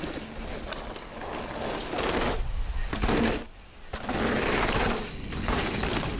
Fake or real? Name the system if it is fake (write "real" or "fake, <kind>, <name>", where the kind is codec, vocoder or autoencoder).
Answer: real